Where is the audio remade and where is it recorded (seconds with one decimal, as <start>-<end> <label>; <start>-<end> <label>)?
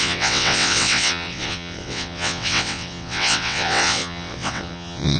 0.0-5.2 remade